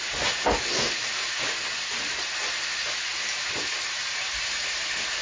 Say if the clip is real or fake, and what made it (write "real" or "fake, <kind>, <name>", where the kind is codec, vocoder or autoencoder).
real